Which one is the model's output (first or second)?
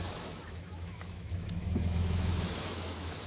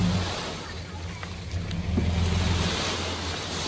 first